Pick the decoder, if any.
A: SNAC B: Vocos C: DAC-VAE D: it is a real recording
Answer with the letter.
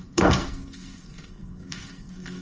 A